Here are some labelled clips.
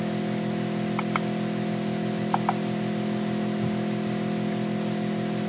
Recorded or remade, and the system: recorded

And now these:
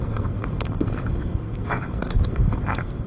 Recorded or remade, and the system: remade, codec, SNAC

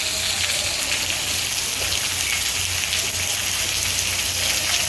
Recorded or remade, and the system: recorded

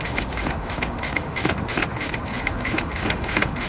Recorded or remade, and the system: remade, autoencoder, DAC-VAE